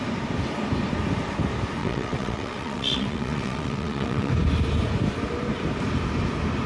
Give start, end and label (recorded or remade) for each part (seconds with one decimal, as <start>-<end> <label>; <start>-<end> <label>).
0.0-1.8 recorded; 1.8-4.3 remade; 4.3-6.7 recorded